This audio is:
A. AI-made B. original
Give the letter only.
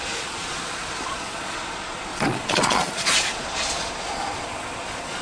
A